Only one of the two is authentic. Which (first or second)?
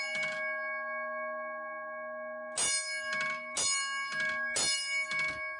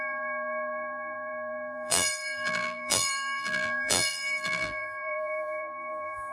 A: first